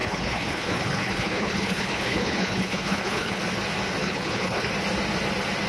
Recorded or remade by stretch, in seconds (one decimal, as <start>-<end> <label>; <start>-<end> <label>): 0.0-3.4 remade; 3.4-4.0 recorded; 4.0-4.7 remade; 4.7-5.7 recorded